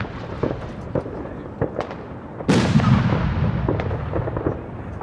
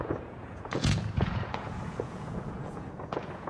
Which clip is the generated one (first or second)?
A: second